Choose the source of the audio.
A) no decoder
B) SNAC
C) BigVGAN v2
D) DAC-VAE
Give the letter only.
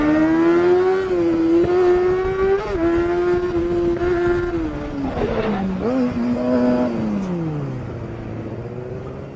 A